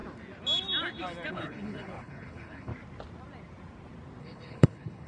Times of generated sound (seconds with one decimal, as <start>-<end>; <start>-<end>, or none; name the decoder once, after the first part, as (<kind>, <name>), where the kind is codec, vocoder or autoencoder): 1.3-2.7 (codec, HILCodec); 4.2-5.1